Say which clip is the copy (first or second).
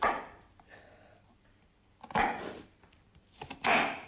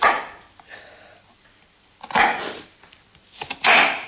first